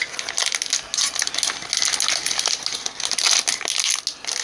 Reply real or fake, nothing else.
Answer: real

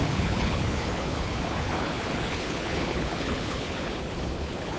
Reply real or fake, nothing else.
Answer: fake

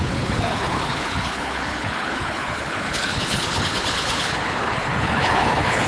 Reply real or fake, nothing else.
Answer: fake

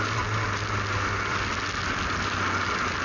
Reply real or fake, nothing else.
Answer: real